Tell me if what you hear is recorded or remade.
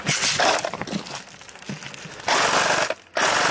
recorded